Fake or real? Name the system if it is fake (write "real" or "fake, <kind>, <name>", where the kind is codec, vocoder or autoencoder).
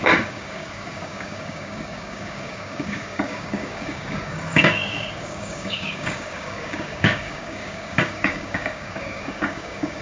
fake, codec, DAC